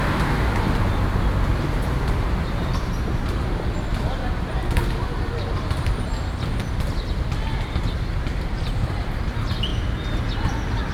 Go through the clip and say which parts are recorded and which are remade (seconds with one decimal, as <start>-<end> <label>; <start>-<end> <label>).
0.0-1.5 recorded; 1.5-3.5 remade; 3.5-10.9 recorded